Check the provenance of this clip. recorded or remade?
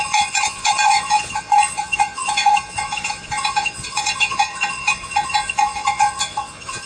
remade